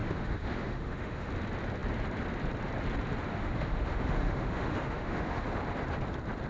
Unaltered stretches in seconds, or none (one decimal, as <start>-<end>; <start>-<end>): 1.3-3.3; 5.4-6.5